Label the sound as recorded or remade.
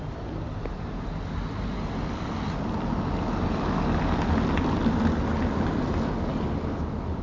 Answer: recorded